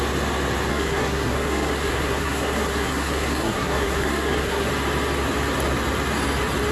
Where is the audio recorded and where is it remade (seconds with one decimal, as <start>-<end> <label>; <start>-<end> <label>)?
0.0-0.7 recorded; 0.7-4.7 remade; 4.7-6.7 recorded